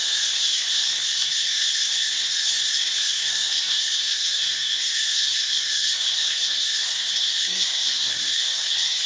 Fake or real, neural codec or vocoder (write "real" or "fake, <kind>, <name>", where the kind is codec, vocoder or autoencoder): fake, codec, SNAC